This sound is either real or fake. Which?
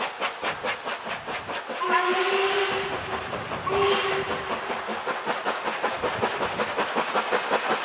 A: real